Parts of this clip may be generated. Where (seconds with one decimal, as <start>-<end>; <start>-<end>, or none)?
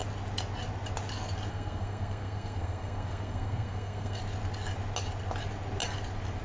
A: 1.5-4.2